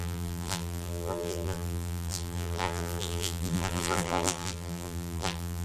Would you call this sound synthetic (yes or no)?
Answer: yes